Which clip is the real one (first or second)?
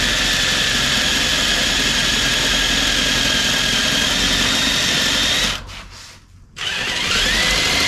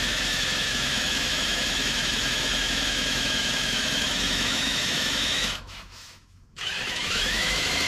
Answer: first